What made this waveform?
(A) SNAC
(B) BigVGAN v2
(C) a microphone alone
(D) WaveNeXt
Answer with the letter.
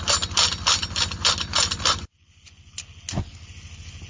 C